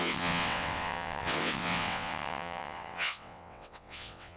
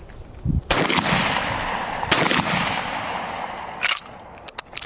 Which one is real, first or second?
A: second